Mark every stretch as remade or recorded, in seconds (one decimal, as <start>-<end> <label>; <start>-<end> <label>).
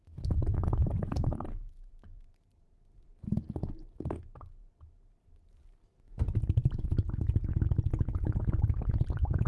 0.0-9.5 remade